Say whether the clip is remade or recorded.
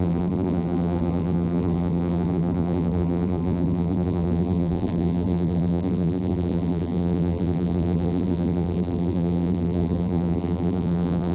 remade